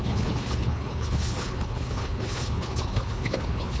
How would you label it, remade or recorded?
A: remade